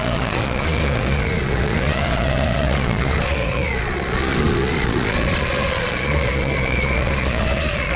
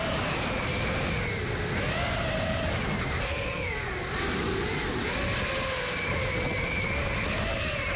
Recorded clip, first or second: second